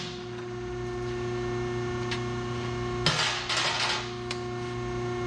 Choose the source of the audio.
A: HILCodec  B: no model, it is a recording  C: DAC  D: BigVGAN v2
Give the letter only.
B